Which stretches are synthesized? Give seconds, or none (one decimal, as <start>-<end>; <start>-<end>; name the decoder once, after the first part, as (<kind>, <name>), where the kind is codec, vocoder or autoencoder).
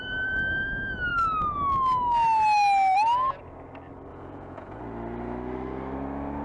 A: 4.1-4.8 (vocoder, Vocos)